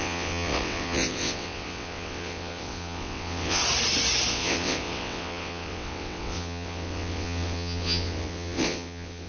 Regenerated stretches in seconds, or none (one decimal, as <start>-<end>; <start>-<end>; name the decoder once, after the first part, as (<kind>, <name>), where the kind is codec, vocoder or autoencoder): 0.0-3.6 (vocoder, WaveNeXt); 4.3-9.3